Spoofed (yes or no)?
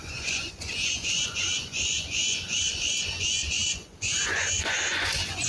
yes